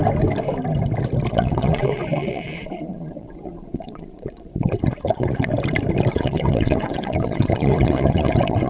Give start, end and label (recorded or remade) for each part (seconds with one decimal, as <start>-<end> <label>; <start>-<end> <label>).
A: 0.0-1.3 recorded; 1.3-5.5 remade; 5.5-6.1 recorded; 6.1-8.7 remade